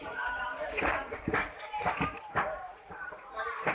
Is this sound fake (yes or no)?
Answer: yes